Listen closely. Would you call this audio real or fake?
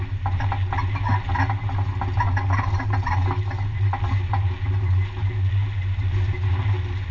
real